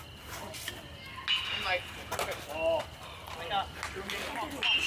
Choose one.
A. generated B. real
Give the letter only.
B